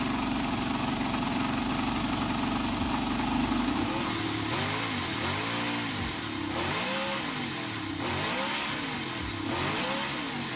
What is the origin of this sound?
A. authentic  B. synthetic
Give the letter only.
A